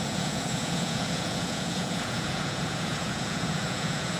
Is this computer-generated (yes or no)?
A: yes